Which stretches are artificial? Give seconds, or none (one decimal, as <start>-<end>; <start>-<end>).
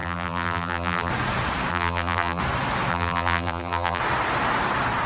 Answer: 0.0-1.1; 1.7-2.4; 2.9-4.0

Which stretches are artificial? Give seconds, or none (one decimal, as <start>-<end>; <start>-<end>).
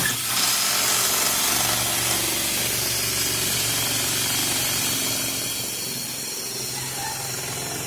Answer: none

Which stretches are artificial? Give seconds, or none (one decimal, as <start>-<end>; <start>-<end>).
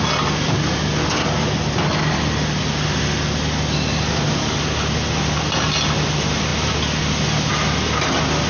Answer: none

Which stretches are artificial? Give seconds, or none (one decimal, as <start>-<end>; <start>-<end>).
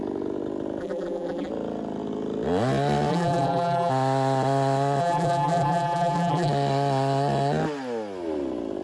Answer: 0.8-1.5; 3.1-3.9; 5.0-6.5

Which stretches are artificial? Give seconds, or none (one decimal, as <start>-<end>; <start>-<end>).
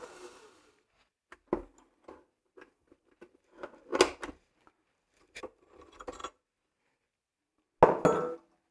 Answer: 6.2-6.8